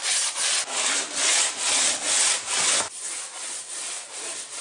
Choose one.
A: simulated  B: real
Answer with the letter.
B